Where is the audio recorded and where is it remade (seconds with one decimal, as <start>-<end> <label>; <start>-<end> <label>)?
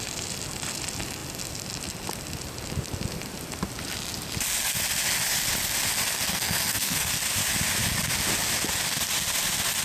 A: 0.0-6.3 recorded; 6.3-7.1 remade; 7.1-9.8 recorded